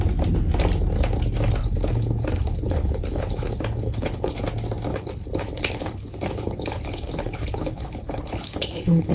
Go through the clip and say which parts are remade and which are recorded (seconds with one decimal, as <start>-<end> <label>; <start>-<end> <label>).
0.0-1.6 recorded; 1.6-4.4 remade; 4.4-4.9 recorded; 4.9-9.1 remade